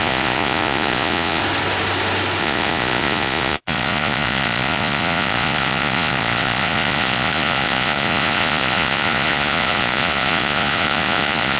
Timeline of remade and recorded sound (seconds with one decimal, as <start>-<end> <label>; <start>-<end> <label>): 0.0-1.4 remade; 1.4-2.4 recorded; 2.4-11.6 remade